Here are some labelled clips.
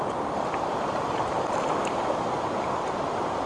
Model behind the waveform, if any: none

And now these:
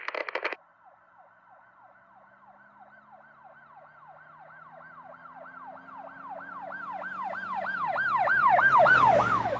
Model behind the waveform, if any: none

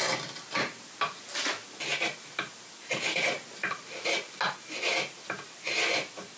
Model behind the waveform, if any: none